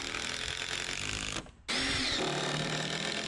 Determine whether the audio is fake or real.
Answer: real